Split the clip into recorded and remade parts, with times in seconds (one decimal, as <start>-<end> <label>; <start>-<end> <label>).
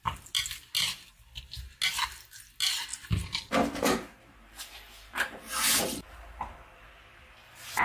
0.0-2.9 recorded; 2.9-6.4 remade; 6.4-7.8 recorded